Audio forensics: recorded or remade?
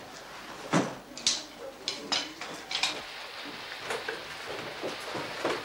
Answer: recorded